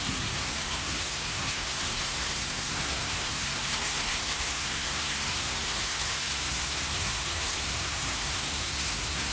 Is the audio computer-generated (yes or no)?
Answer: yes